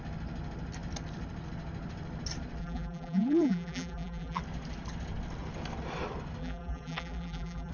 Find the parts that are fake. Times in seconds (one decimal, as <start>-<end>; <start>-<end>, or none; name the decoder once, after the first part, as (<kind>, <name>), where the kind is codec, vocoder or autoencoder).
2.6-4.4 (vocoder, BigVGAN v2); 6.4-7.7